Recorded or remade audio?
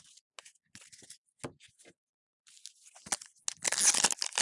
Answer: recorded